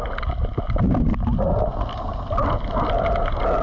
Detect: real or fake real